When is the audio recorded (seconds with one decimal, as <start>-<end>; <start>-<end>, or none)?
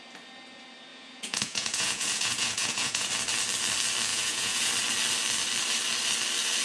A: 0.0-0.9; 3.1-4.1; 4.7-6.6